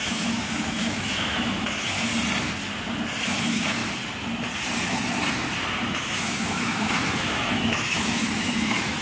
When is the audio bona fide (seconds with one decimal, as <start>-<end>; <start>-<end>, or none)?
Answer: 2.1-3.2; 3.8-5.9